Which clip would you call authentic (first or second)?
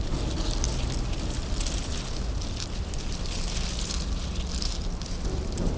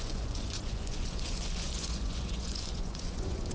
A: first